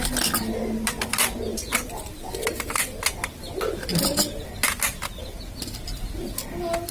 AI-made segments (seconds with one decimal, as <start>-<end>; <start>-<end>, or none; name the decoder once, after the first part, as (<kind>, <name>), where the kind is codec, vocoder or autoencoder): 1.5-3.4 (vocoder, BigVGAN v2)